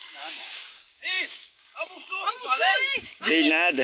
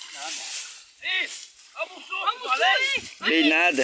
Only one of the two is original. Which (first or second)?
second